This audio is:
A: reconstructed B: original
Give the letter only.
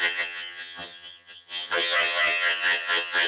A